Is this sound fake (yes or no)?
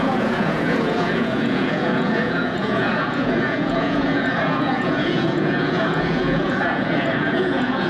yes